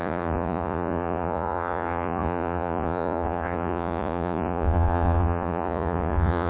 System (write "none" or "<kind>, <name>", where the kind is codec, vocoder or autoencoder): vocoder, Vocos